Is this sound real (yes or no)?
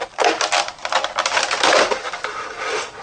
yes